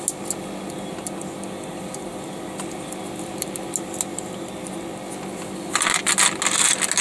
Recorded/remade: recorded